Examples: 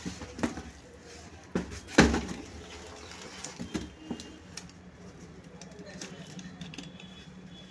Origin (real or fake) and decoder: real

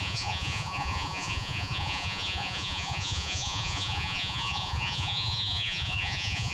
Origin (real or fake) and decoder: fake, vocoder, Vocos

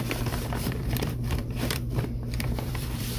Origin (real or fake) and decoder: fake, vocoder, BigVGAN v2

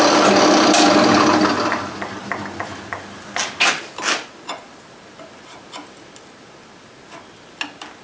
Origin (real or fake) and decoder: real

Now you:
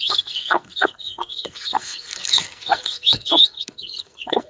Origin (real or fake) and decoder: fake, codec, SNAC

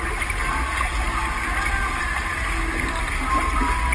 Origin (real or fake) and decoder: real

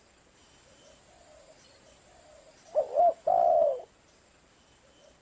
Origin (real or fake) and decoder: real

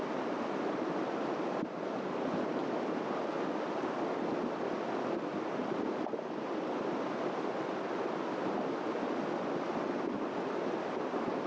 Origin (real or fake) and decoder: real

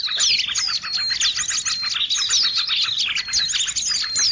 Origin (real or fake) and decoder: real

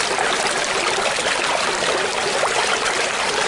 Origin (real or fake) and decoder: real